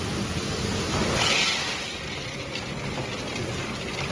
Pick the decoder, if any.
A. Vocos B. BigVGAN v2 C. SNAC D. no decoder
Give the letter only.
D